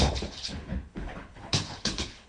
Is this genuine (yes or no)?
no